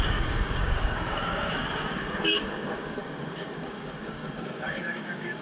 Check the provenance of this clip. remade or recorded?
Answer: remade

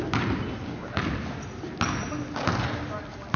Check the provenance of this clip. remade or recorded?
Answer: recorded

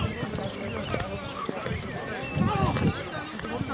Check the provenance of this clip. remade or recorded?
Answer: recorded